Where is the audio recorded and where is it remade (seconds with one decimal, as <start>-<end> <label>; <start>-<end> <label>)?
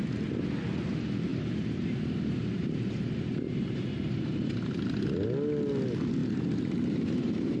0.0-1.3 recorded; 1.3-5.0 remade; 5.0-6.2 recorded; 6.2-7.6 remade